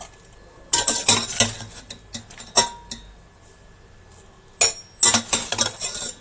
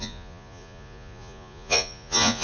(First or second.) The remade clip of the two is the second